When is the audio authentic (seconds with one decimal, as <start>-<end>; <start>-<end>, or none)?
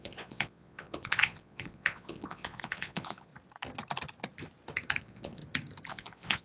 3.3-5.0; 5.4-5.9